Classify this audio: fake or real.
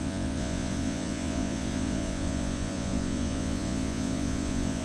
fake